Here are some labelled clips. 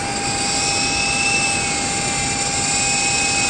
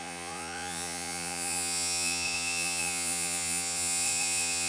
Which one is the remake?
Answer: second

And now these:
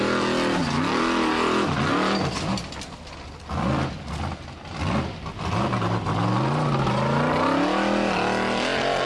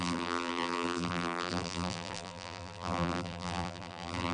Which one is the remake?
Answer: second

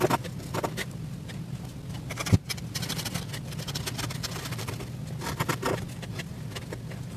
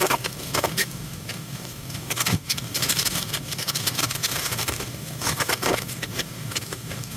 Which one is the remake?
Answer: second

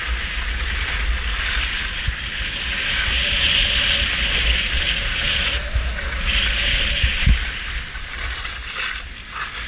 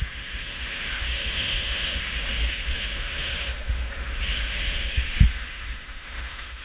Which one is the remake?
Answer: second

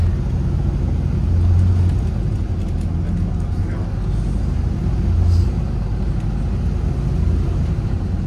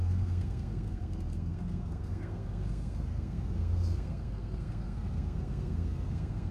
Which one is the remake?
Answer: second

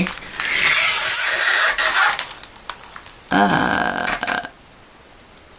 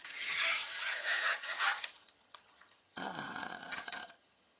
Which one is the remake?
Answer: second